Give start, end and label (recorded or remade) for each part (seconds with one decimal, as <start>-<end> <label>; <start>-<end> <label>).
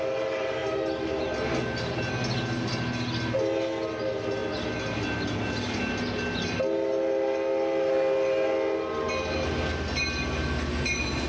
0.0-11.3 recorded